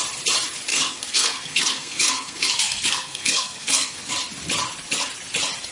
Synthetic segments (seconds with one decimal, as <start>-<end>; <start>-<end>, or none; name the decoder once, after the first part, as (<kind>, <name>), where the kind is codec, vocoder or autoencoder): 0.7-4.1 (codec, SNAC)